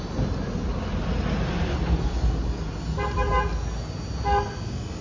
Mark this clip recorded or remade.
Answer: recorded